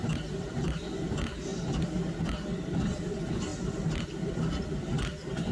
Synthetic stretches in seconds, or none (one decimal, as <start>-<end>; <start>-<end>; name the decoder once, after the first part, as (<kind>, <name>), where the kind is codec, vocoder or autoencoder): 0.0-0.8 (vocoder, BigVGAN v2)